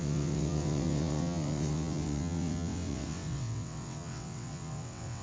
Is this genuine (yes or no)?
no